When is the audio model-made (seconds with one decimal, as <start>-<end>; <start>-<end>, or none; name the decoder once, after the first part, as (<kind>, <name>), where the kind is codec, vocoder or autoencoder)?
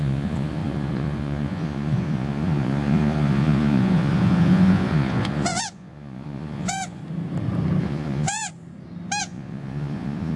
0.0-7.0 (vocoder, Vocos); 7.8-8.5; 9.2-10.4